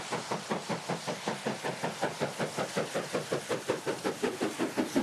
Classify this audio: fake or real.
real